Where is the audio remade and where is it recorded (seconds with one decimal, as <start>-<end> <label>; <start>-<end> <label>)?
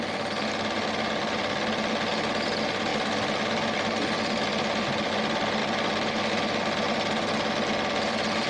0.0-8.5 recorded